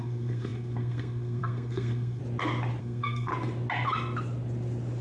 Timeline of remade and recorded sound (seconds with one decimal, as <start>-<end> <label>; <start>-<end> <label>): 0.0-2.2 remade; 2.2-2.8 recorded; 2.8-3.3 remade; 3.3-5.0 recorded